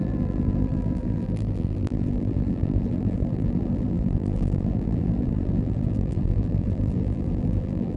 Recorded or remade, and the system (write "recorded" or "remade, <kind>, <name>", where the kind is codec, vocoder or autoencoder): remade, vocoder, BigVGAN v2